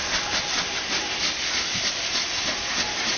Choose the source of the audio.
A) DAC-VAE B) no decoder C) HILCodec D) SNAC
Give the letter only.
B